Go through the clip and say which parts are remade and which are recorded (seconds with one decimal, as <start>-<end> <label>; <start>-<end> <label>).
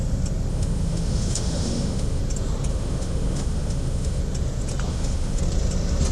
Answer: 0.0-0.5 recorded; 0.5-2.2 remade; 2.2-2.7 recorded; 2.7-4.2 remade; 4.2-4.9 recorded; 4.9-5.4 remade; 5.4-6.1 recorded